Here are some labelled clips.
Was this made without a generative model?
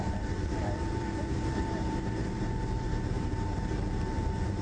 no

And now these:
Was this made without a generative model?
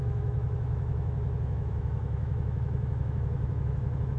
no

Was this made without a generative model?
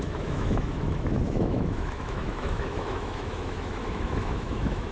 no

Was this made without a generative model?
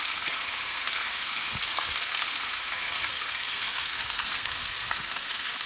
no